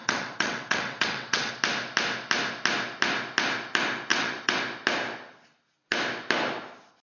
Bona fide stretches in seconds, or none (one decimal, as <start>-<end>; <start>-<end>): 1.5-4.1; 4.6-7.2